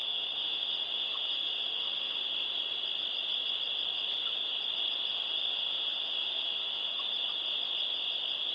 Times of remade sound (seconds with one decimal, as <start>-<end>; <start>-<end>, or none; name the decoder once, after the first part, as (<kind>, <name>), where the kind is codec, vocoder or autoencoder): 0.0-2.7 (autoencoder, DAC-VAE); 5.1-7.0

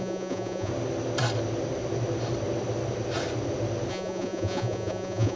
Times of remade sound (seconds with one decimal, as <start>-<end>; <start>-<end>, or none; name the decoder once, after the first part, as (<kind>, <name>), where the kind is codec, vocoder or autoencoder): 0.0-0.7 (vocoder, Vocos); 3.9-5.4

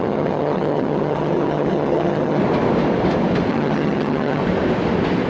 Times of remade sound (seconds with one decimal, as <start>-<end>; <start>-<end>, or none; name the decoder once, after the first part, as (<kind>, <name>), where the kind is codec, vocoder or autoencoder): 0.0-2.4 (vocoder, HiFi-GAN); 3.5-4.4

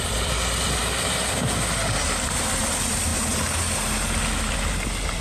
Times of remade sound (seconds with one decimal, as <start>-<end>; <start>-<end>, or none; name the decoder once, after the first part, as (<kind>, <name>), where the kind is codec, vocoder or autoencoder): 0.0-0.8 (vocoder, BigVGAN v2); 2.6-3.1; 4.5-5.2

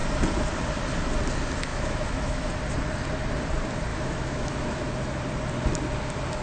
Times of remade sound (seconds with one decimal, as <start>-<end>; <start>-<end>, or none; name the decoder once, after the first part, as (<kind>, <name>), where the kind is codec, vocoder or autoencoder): 1.7-2.5 (autoencoder, DAC-VAE); 3.9-4.9